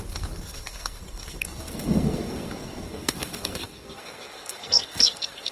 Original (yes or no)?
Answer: no